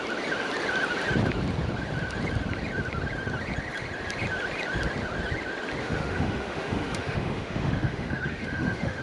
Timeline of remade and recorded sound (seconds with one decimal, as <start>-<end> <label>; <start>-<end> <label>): 0.0-5.8 recorded; 5.8-9.0 remade